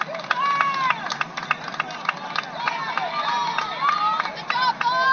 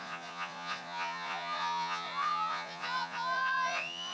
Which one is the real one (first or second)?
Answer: first